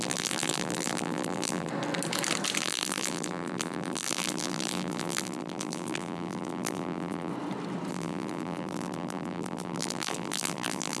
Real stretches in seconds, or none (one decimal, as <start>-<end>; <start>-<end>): 1.7-2.6; 7.3-7.9